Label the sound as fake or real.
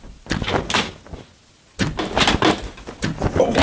real